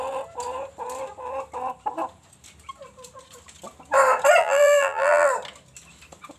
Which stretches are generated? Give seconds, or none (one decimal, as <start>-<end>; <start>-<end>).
4.4-5.3